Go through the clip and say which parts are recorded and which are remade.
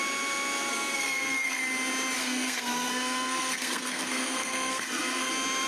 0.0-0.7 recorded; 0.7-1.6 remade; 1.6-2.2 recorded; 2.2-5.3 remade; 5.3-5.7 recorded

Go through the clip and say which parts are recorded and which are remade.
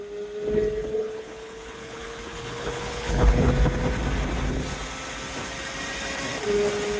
0.0-0.8 recorded; 0.8-3.5 remade; 3.5-7.0 recorded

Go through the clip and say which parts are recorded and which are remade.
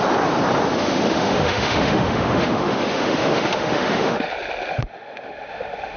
0.0-0.7 recorded; 0.7-4.3 remade; 4.3-4.7 recorded; 4.7-6.0 remade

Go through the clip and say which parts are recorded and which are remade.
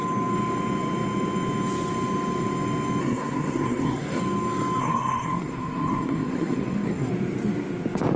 0.0-3.0 recorded; 3.0-4.2 remade; 4.2-4.8 recorded; 4.8-7.1 remade; 7.1-8.2 recorded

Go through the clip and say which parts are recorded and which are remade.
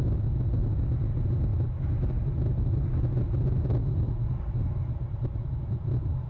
0.0-2.5 recorded; 2.5-4.1 remade; 4.1-6.3 recorded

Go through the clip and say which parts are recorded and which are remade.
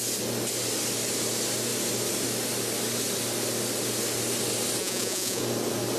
0.0-4.8 recorded; 4.8-5.4 remade; 5.4-6.0 recorded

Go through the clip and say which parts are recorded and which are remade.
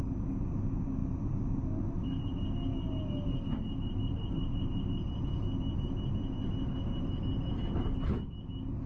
0.0-8.9 recorded